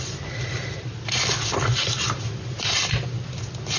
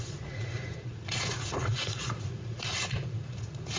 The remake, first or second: second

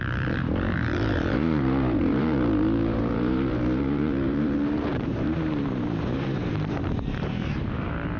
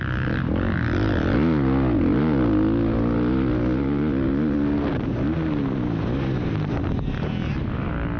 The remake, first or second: first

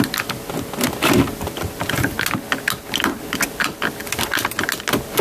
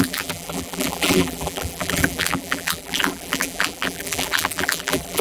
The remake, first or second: second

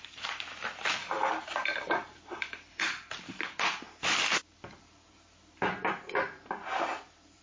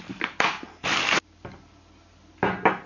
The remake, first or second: first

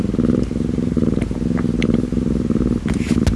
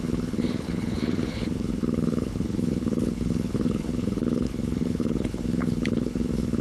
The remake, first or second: second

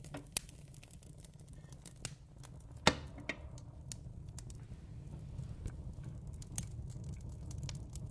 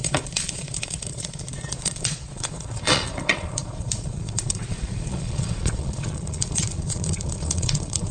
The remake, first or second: second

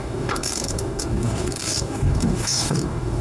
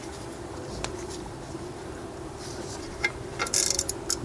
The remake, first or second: first